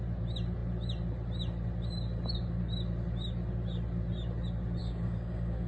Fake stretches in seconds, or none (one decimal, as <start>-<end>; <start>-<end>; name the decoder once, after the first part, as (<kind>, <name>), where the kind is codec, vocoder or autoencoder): 4.8-5.7 (codec, DAC)

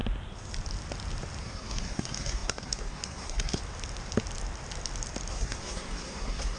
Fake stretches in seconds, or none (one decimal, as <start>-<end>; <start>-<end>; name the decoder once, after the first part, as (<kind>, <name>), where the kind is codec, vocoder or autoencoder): 1.4-3.6 (codec, SNAC); 5.3-6.6